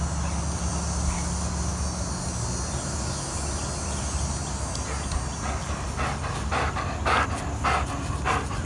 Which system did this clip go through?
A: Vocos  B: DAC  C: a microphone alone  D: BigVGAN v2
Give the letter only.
C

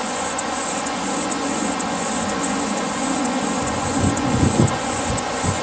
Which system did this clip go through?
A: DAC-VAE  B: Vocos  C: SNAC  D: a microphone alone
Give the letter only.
B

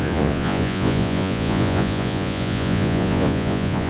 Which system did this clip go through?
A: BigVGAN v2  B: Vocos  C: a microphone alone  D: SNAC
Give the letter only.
B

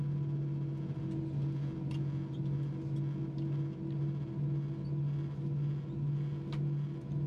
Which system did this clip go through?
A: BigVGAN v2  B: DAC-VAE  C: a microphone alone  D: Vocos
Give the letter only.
C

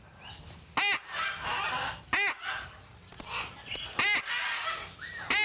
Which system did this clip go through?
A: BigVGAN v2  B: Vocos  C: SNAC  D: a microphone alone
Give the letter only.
D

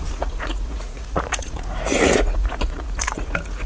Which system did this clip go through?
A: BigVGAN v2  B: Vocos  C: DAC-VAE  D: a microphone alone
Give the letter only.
B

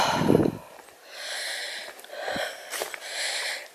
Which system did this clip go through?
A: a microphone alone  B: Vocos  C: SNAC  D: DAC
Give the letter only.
A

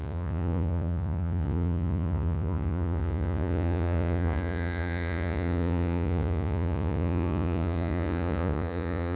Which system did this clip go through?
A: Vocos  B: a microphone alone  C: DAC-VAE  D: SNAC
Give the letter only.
A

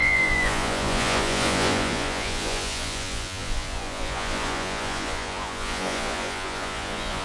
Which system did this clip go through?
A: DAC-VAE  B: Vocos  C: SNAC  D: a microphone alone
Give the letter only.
B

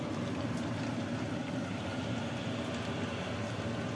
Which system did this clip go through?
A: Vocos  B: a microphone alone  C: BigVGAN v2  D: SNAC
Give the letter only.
B